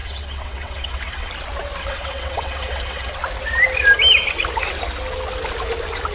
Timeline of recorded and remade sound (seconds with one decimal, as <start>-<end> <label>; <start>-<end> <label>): 0.0-1.3 remade; 1.3-1.8 recorded; 1.8-3.1 remade; 3.1-6.1 recorded